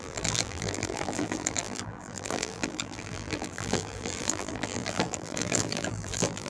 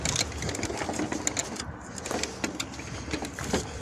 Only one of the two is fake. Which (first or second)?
first